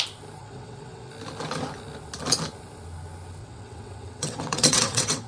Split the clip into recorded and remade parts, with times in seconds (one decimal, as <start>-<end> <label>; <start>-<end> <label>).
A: 0.0-0.4 recorded; 0.4-1.1 remade; 1.1-3.4 recorded; 3.4-5.3 remade